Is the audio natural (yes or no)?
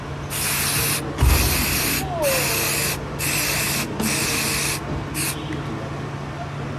yes